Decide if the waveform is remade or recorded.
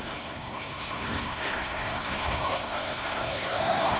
remade